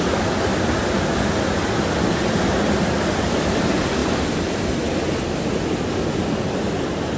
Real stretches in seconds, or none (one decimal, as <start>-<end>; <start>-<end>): 0.0-7.2